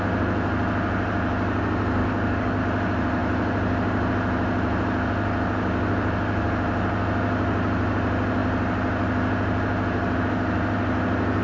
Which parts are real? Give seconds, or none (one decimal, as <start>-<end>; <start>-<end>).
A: 0.0-2.0; 2.6-11.4